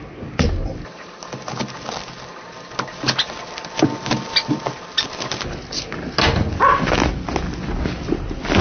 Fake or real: real